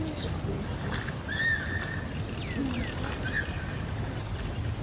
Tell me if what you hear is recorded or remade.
recorded